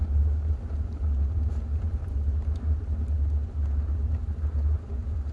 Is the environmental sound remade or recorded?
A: recorded